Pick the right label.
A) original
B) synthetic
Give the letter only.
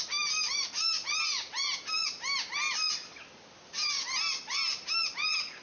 A